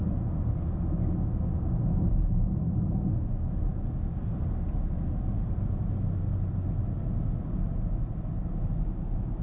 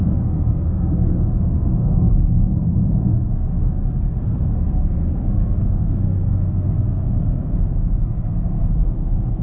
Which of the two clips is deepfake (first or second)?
second